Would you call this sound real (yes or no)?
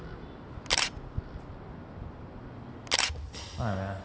yes